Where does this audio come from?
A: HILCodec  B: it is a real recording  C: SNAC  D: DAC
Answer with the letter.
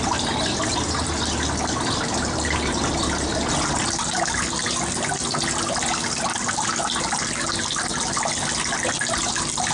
B